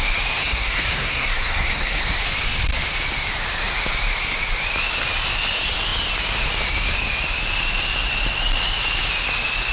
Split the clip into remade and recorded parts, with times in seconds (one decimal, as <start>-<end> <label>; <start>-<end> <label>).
0.0-0.4 recorded; 0.4-2.0 remade; 2.0-9.7 recorded